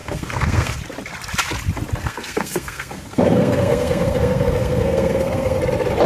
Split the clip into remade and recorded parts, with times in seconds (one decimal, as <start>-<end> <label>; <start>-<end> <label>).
0.0-0.8 remade; 0.8-2.0 recorded; 2.0-5.6 remade; 5.6-6.1 recorded